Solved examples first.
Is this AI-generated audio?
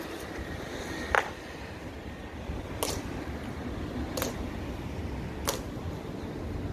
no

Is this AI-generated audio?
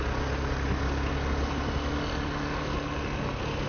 no